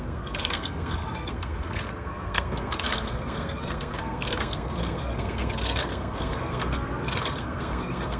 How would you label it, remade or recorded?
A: remade